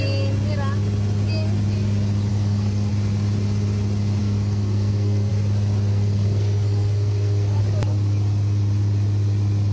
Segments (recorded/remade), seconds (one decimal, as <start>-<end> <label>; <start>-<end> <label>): 0.0-2.3 recorded; 2.3-2.9 remade; 2.9-4.2 recorded; 4.2-5.3 remade; 5.3-5.9 recorded; 5.9-7.6 remade; 7.6-9.7 recorded